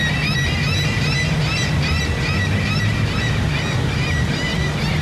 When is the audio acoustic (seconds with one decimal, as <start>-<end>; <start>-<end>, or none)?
0.0-5.0